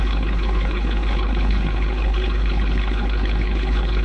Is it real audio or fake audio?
fake